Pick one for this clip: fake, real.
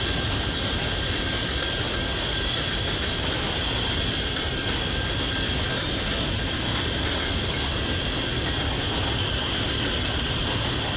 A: real